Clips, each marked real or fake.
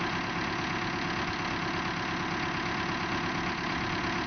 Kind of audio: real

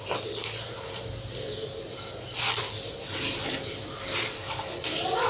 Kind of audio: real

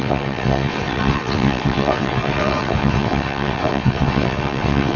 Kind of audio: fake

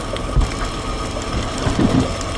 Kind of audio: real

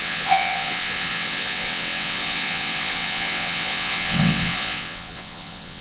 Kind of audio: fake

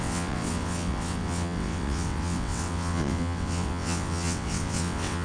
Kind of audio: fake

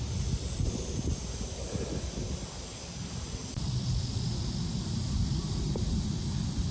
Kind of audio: real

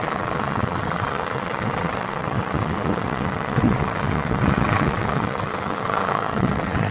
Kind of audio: fake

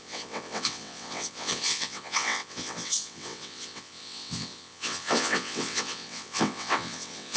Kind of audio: fake